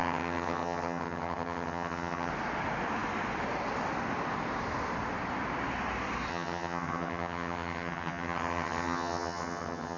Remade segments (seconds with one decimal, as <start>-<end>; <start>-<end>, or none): 0.0-2.3; 6.3-10.0